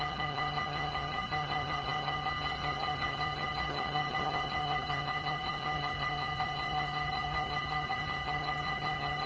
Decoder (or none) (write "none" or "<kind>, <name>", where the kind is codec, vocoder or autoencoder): vocoder, HiFi-GAN